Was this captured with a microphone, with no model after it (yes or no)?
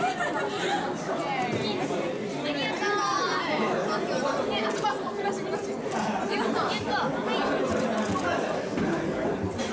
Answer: yes